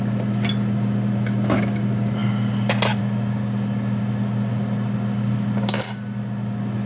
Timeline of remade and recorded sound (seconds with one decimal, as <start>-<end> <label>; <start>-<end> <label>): 0.0-6.9 recorded